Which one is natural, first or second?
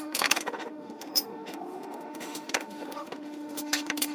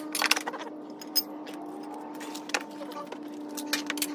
second